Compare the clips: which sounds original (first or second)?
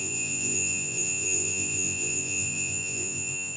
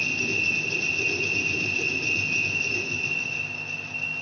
second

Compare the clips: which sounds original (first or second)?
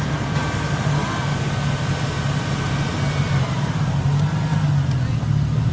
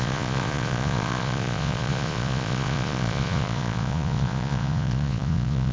first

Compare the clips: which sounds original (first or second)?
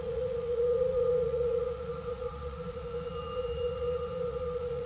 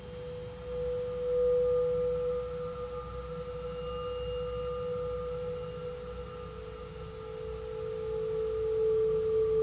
second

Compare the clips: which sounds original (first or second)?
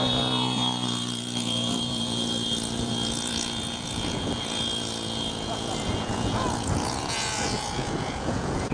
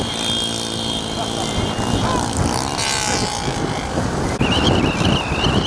second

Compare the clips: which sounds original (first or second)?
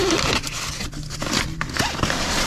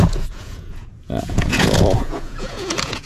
first